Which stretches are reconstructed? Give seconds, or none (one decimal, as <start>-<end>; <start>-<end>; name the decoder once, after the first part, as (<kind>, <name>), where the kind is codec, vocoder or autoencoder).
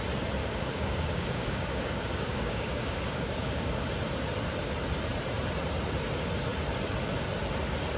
0.4-3.9 (codec, DAC)